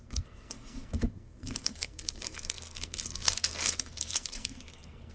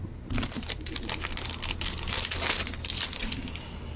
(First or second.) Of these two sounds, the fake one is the first